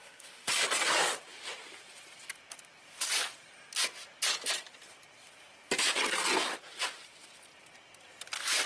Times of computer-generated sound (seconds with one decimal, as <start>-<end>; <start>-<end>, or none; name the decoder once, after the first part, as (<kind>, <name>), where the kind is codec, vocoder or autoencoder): 0.0-0.5 (autoencoder, DAC-VAE)